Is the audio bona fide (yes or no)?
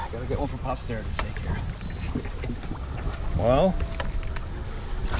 yes